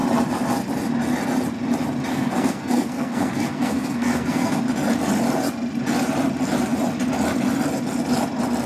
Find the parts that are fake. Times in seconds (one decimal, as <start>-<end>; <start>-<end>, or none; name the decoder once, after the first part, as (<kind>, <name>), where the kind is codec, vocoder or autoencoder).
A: 2.1-4.6 (codec, SNAC)

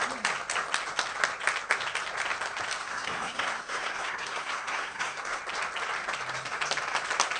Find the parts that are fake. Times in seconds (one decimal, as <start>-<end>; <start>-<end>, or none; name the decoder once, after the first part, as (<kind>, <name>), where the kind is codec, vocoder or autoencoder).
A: 2.8-5.4 (codec, SNAC)

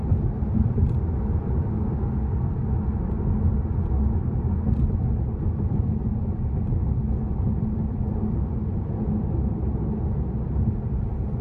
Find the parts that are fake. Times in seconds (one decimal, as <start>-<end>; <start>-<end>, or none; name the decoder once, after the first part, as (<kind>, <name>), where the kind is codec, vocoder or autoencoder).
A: none

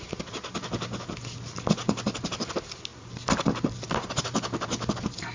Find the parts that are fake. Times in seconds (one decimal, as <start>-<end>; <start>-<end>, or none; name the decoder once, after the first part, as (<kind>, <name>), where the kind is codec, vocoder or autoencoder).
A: 2.9-4.2 (vocoder, BigVGAN v2)

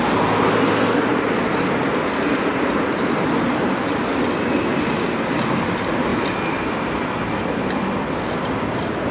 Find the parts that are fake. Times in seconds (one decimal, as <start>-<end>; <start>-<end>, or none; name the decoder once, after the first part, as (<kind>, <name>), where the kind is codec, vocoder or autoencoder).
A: none